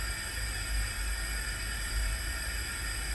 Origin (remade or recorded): recorded